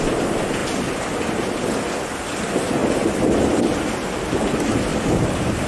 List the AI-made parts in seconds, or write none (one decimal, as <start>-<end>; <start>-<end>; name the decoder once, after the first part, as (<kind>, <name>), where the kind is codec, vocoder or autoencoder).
4.9-5.7 (vocoder, BigVGAN v2)